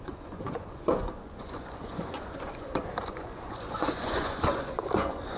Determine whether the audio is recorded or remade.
remade